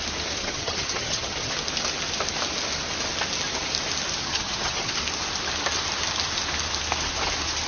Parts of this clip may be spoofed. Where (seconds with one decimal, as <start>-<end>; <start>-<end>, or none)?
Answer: 0.4-1.5; 4.2-4.9